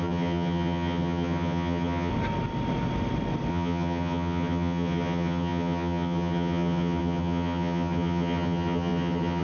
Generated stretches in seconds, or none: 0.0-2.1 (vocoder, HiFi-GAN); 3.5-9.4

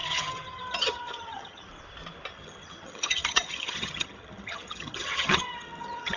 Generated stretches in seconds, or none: 0.0-1.7 (vocoder, HiFi-GAN); 2.3-6.2

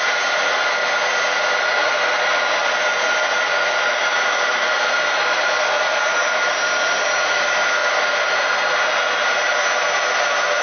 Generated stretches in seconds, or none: none

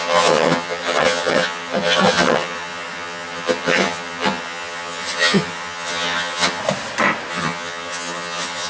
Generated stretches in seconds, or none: 0.0-6.6 (vocoder, HiFi-GAN); 7.3-8.7

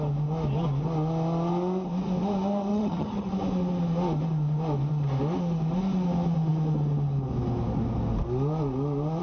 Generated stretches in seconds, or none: 2.7-3.3 (vocoder, HiFi-GAN)